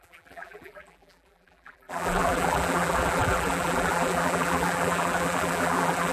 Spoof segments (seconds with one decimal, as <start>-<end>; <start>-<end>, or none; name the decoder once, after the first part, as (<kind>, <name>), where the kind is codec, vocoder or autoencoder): 0.0-6.1 (vocoder, BigVGAN v2)